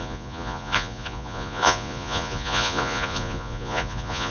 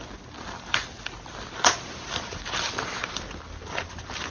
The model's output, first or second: first